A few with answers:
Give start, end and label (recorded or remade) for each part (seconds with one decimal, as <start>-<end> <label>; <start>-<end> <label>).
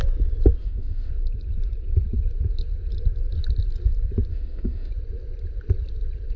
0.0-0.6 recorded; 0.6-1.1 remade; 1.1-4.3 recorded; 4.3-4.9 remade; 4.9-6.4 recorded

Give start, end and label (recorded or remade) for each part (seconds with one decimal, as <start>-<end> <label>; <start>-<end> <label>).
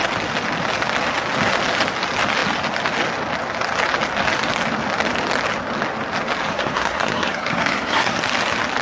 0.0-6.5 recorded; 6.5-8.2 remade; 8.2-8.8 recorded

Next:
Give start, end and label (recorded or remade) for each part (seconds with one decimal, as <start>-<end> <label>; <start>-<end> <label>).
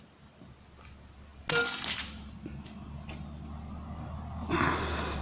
0.0-5.2 recorded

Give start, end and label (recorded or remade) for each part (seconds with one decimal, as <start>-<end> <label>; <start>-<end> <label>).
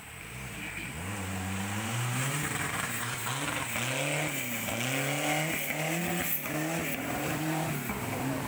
0.0-3.2 remade; 3.2-7.0 recorded; 7.0-8.5 remade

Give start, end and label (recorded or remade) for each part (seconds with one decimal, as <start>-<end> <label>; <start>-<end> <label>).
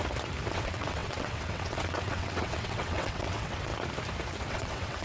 0.0-0.5 recorded; 0.5-3.7 remade; 3.7-4.5 recorded; 4.5-5.0 remade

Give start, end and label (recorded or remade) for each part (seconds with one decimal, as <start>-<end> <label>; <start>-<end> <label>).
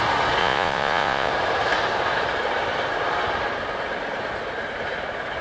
0.0-0.4 recorded; 0.4-1.3 remade; 1.3-5.4 recorded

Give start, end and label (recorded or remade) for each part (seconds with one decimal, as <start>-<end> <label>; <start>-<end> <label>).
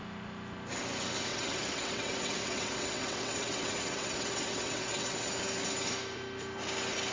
0.0-1.3 recorded; 1.3-5.3 remade; 5.3-7.1 recorded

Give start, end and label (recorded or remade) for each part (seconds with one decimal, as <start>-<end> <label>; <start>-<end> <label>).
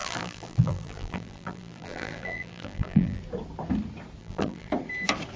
0.0-3.2 remade; 3.2-4.2 recorded; 4.2-4.7 remade; 4.7-5.4 recorded